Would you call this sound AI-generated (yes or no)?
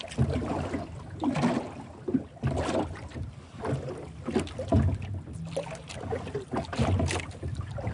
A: no